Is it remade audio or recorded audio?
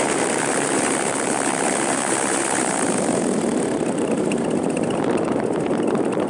remade